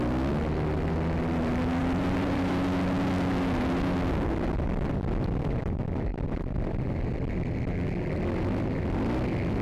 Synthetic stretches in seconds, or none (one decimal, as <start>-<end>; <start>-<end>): 1.8-2.5; 6.1-6.9